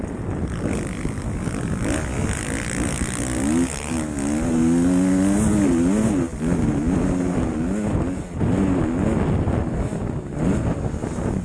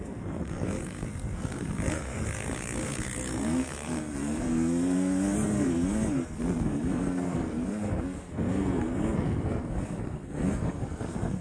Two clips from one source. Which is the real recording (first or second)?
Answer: first